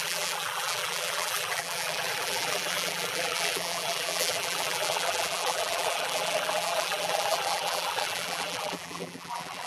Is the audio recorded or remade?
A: remade